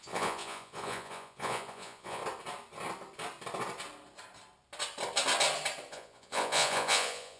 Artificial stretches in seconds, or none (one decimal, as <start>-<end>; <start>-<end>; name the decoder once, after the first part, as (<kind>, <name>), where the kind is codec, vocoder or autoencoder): 0.0-2.2 (vocoder, Vocos); 5.9-7.4